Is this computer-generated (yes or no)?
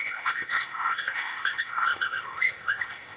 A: yes